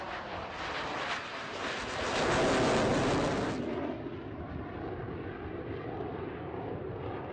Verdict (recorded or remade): recorded